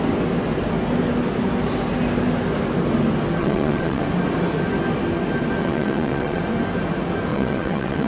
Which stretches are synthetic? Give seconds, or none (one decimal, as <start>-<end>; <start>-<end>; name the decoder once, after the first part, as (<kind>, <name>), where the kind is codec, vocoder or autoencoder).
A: 3.4-4.0 (vocoder, WaveNeXt); 5.6-6.4; 7.3-8.1